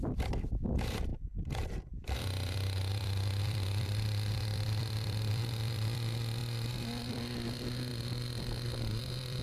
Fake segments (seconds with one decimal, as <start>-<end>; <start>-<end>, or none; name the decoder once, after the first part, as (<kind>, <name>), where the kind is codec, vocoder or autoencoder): 0.0-1.1 (vocoder, BigVGAN v2); 2.0-6.4; 7.1-7.9; 9.0-9.4